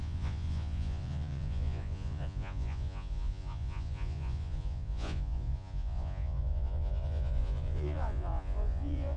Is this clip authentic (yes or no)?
no